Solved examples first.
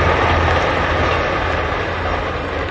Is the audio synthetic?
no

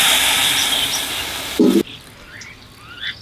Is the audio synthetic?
no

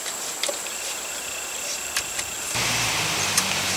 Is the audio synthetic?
yes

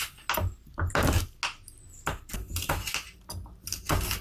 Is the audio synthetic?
no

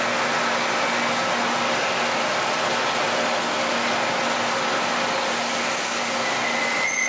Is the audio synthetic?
no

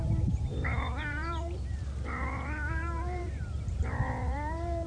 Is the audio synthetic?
yes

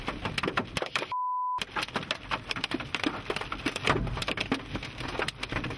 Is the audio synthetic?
no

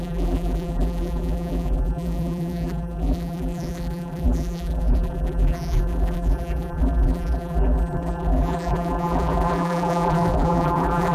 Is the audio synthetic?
yes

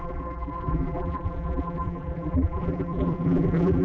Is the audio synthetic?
yes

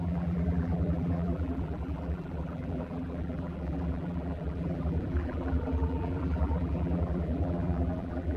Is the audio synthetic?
yes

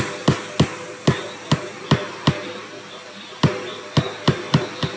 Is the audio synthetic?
no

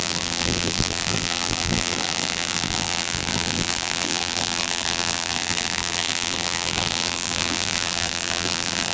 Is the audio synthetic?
yes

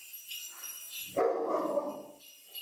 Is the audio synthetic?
no